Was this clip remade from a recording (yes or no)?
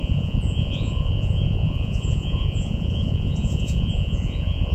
yes